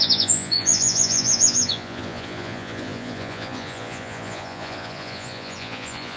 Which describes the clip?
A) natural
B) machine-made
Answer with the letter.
B